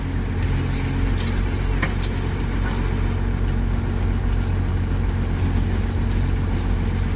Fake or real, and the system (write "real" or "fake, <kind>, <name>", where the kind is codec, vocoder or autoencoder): real